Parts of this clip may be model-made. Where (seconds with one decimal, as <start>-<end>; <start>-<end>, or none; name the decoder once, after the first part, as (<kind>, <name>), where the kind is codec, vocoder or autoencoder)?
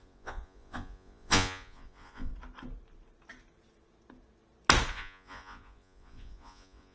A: 0.0-2.3 (vocoder, Vocos); 4.9-6.9